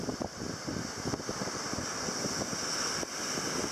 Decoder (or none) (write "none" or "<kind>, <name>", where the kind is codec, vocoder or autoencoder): none